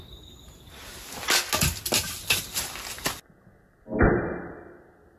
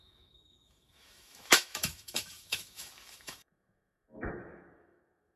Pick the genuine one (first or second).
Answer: first